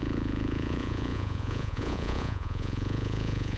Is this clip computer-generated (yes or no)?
yes